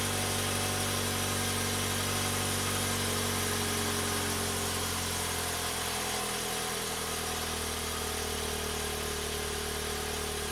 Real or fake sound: real